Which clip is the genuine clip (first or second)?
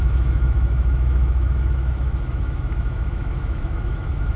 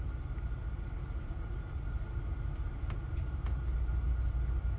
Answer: second